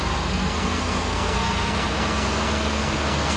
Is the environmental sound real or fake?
fake